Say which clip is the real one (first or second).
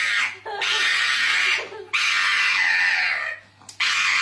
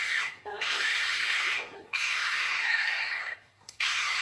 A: first